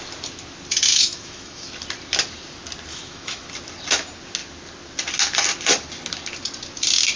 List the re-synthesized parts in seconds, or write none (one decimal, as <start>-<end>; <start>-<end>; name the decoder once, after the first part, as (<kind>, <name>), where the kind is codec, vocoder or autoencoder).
0.9-1.7 (autoencoder, DAC-VAE); 2.9-3.5